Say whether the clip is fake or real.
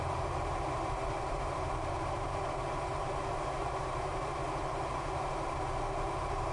fake